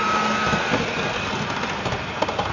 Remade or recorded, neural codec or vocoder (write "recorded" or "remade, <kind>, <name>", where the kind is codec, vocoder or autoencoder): recorded